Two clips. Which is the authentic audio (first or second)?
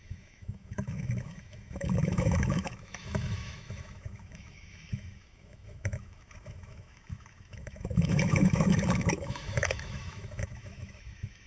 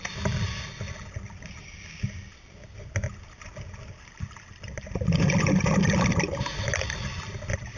second